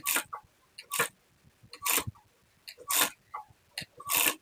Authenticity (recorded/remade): recorded